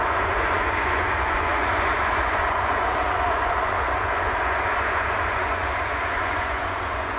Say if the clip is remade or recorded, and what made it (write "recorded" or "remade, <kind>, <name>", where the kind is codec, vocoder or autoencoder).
remade, vocoder, Vocos